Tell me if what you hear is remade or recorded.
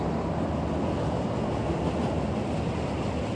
recorded